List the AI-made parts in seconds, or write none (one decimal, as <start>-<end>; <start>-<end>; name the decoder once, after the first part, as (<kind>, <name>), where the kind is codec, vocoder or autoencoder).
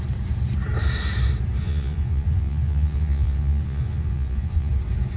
1.6-4.7 (vocoder, Vocos)